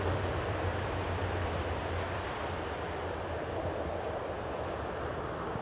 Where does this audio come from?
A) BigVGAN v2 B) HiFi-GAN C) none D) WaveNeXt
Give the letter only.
A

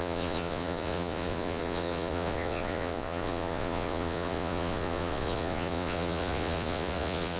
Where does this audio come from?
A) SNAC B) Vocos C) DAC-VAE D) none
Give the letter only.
B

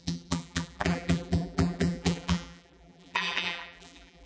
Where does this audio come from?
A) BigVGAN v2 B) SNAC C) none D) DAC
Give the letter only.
A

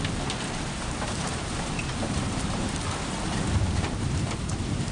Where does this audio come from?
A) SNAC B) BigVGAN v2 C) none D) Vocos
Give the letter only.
B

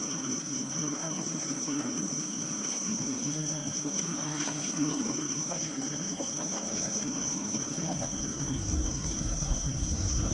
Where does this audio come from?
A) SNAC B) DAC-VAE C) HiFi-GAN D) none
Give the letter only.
A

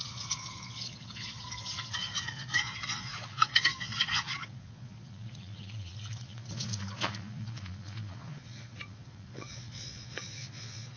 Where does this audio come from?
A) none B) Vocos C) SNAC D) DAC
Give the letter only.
B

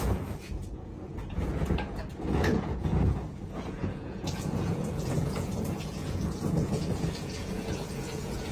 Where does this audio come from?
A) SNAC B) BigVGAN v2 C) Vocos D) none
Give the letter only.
C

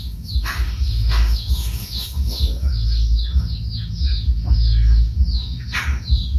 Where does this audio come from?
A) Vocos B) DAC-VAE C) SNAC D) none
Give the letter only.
B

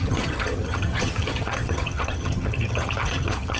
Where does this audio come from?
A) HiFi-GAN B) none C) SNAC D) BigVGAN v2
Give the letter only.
A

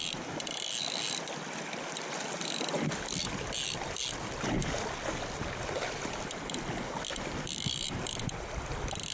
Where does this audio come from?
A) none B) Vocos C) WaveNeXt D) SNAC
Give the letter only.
A